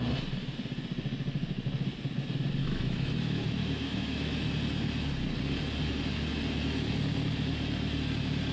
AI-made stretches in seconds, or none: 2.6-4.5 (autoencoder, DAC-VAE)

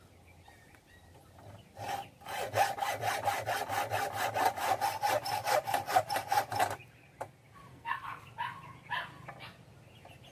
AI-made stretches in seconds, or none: 7.7-8.2 (codec, SNAC)

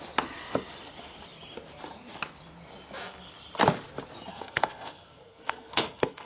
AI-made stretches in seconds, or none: 4.3-6.3 (codec, SNAC)